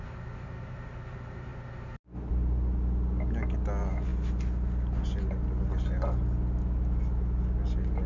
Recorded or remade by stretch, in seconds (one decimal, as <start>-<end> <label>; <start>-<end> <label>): 0.0-8.1 recorded